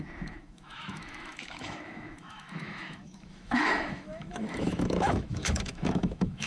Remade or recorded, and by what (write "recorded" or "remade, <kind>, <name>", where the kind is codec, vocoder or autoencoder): remade, autoencoder, DAC-VAE